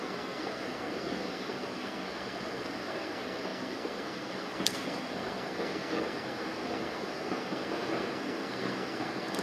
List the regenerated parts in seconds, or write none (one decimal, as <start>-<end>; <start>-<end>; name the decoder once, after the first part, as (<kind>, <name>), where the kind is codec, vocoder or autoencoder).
0.0-9.4 (codec, SNAC)